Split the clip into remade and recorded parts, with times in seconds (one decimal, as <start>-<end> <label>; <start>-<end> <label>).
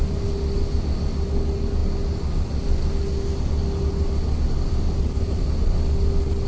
0.0-6.5 recorded